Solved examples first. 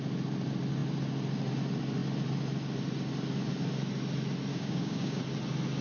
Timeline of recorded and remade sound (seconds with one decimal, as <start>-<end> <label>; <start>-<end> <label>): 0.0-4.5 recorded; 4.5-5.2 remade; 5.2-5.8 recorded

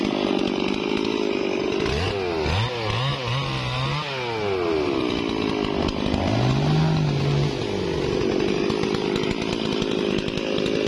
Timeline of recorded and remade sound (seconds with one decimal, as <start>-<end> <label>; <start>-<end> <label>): 0.0-10.9 recorded

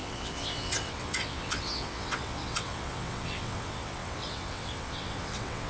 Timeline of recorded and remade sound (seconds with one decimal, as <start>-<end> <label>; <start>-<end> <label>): 0.0-5.7 remade

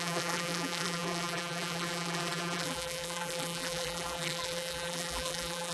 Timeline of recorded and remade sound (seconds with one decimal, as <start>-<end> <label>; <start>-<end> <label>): 0.0-5.7 remade

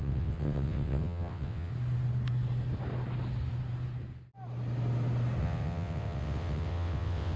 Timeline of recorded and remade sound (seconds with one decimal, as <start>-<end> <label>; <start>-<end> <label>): 0.0-1.7 remade; 1.7-5.4 recorded; 5.4-7.4 remade